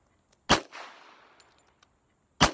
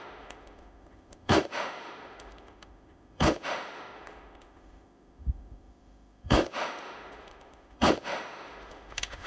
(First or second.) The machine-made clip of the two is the second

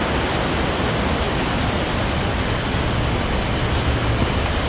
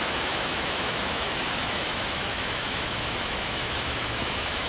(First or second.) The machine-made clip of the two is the second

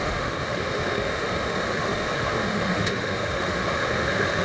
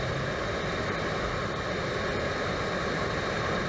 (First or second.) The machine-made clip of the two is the first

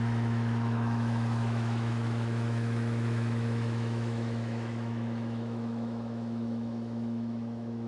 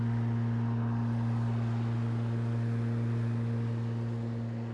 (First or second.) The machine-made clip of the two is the first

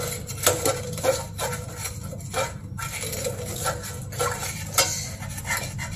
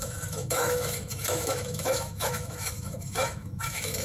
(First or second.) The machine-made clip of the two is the second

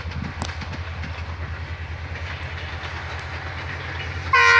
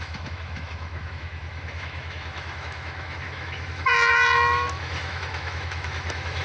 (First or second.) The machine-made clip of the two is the second